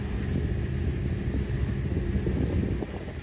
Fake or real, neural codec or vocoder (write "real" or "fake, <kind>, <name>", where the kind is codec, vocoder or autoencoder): real